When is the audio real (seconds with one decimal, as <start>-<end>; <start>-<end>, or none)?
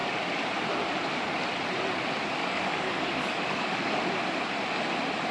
0.0-2.4; 4.0-5.3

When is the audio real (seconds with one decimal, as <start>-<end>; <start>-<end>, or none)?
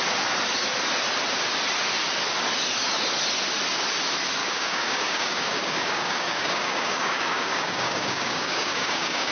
0.0-4.4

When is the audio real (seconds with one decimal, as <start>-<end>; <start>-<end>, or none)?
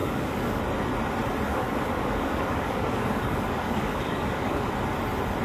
0.6-1.5; 4.7-5.4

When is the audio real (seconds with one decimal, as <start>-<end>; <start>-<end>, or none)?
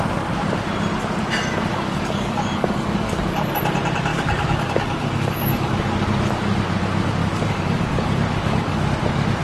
0.0-1.7; 3.5-4.1; 5.9-7.2; 8.9-9.4